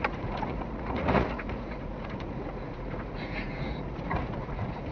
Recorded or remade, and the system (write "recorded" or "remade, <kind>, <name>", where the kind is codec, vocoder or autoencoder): remade, vocoder, Vocos